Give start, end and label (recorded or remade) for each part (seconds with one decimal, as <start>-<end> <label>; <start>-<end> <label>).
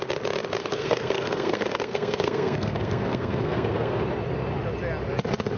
0.0-0.6 recorded; 0.6-4.0 remade; 4.0-5.6 recorded